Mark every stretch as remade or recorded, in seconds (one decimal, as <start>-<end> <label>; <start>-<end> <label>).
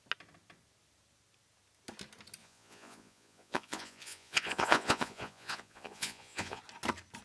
0.0-2.4 recorded; 2.4-6.6 remade; 6.6-7.2 recorded